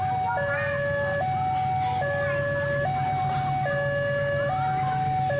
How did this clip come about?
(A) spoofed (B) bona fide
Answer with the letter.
B